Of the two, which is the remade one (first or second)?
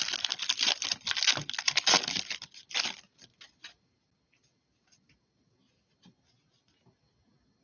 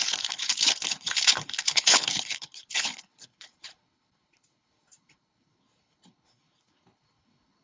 second